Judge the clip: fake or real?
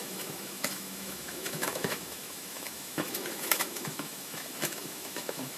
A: fake